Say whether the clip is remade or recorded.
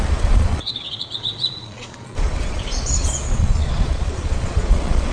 remade